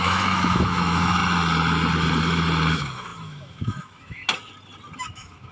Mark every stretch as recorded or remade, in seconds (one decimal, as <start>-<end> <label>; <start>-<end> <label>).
0.0-1.2 remade; 1.2-2.7 recorded; 2.7-4.2 remade; 4.2-5.0 recorded; 5.0-5.5 remade